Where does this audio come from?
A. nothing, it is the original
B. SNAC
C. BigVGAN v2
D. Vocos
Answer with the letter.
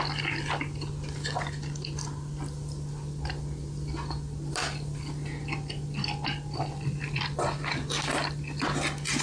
A